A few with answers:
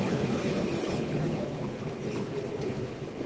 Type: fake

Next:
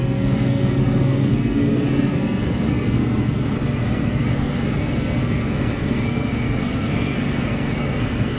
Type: fake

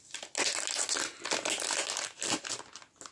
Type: real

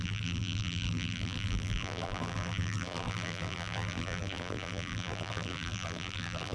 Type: fake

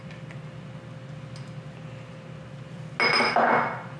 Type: real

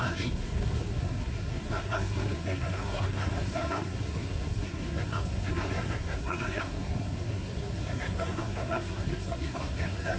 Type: fake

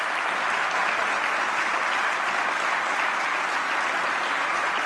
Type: real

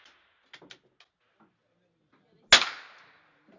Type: real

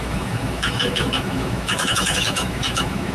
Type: fake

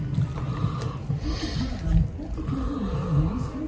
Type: real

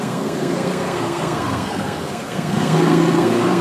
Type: fake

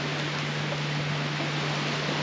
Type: real